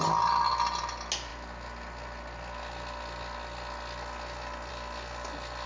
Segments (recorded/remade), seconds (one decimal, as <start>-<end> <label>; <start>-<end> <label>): 0.0-5.7 recorded